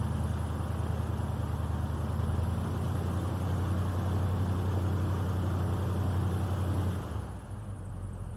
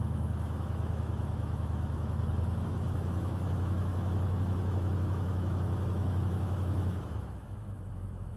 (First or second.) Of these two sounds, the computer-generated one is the second